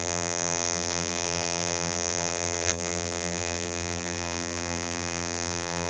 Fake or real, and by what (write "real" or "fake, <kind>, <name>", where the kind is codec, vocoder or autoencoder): fake, vocoder, BigVGAN v2